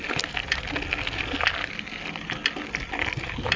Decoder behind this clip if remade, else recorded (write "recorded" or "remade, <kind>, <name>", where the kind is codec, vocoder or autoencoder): recorded